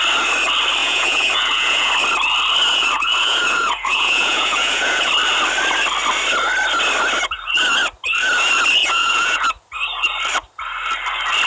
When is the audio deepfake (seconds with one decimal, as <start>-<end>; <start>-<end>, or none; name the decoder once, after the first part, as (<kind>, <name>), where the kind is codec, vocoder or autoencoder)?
0.8-1.9 (vocoder, Vocos); 2.7-5.1; 8.8-9.4